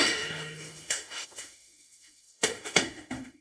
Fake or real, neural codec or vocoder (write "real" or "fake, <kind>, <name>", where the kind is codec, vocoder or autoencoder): fake, autoencoder, DAC-VAE